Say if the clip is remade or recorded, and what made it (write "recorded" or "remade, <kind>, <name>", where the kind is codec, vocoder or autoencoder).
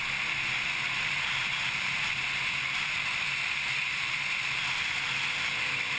recorded